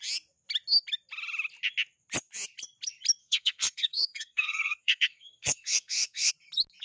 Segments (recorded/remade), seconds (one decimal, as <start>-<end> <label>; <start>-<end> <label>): 0.0-3.2 recorded; 3.2-6.3 remade; 6.3-6.8 recorded